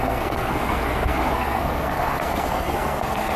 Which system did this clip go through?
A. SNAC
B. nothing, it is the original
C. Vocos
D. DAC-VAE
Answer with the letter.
A